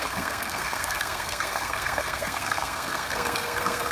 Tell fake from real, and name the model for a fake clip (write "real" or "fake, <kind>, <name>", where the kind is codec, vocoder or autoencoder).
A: fake, codec, SNAC